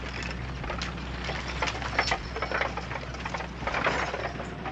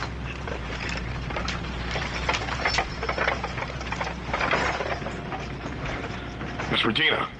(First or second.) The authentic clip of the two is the first